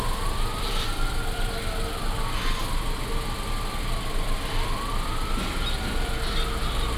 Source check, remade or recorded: recorded